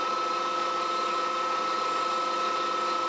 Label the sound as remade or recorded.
recorded